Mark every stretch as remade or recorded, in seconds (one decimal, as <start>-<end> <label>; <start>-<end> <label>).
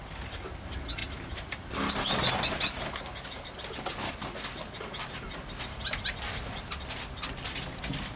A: 0.0-8.2 recorded